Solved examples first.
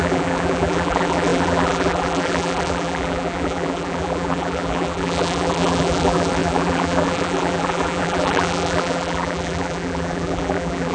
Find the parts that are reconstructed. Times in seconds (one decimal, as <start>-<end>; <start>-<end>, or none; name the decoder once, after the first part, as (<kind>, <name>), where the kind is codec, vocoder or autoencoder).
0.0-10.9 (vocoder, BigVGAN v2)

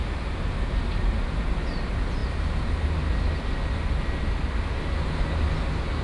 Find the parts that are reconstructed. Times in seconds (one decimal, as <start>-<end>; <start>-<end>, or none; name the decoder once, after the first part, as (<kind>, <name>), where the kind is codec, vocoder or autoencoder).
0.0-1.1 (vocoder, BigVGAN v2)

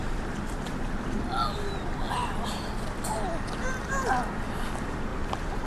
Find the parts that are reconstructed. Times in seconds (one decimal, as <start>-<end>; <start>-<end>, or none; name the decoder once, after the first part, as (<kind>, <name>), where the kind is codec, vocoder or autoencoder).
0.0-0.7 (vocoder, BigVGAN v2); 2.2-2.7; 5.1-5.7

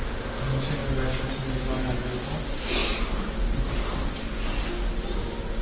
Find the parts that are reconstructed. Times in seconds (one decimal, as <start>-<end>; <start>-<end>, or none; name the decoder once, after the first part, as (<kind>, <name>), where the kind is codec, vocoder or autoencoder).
2.8-4.6 (vocoder, BigVGAN v2)